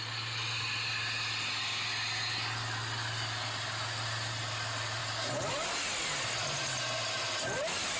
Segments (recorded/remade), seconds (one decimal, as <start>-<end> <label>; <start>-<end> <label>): 0.0-8.0 recorded